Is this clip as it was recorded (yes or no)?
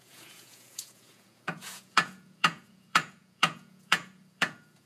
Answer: no